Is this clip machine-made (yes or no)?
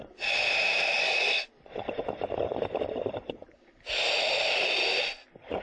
no